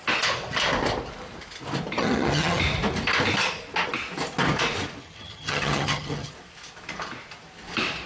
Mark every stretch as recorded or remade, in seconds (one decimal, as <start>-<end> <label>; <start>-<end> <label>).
0.0-2.0 recorded; 2.0-2.6 remade; 2.6-5.0 recorded; 5.0-6.3 remade; 6.3-8.1 recorded